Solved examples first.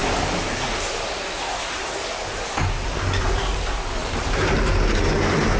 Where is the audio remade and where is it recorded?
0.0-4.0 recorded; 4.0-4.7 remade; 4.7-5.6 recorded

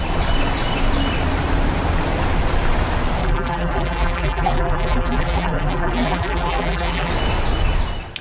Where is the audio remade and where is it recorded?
0.0-3.2 recorded; 3.2-7.1 remade; 7.1-8.2 recorded

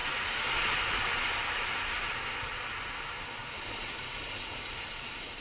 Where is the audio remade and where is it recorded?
0.0-2.0 remade; 2.0-3.4 recorded; 3.4-5.4 remade

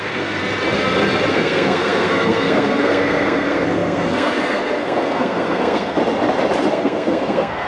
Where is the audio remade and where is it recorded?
0.0-0.4 remade; 0.4-1.3 recorded; 1.3-6.0 remade; 6.0-6.7 recorded; 6.7-7.7 remade

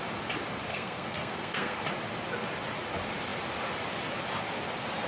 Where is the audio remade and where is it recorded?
0.0-0.7 recorded; 0.7-1.8 remade; 1.8-5.1 recorded